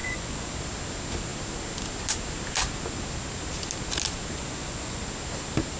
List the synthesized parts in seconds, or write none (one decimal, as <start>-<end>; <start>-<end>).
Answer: 0.0-0.5; 4.4-5.0

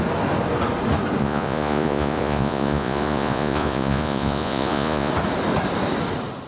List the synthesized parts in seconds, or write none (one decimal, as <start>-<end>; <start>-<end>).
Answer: 1.2-5.1

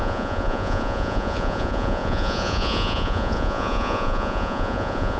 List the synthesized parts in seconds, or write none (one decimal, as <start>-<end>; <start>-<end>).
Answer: 0.0-5.2

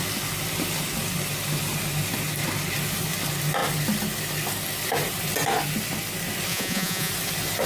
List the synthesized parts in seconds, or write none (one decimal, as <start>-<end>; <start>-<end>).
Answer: 6.5-7.1

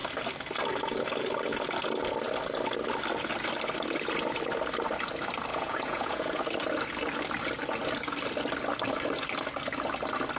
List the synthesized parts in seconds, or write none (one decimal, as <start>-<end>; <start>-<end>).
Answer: 5.5-6.4

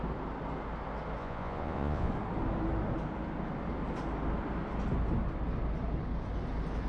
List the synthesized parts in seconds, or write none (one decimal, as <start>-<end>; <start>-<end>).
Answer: 1.2-2.1

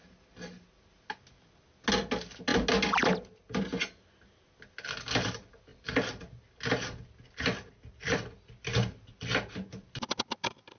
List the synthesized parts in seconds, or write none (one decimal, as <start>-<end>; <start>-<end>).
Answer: none

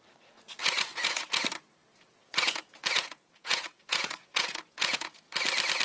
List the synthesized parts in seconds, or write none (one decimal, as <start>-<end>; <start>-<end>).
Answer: 0.6-1.4; 1.8-5.3